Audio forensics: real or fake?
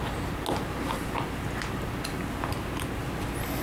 real